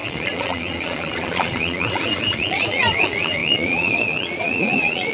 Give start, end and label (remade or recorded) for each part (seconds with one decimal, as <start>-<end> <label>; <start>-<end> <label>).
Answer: 0.0-5.1 remade